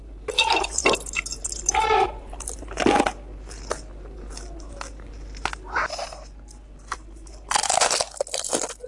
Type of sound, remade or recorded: recorded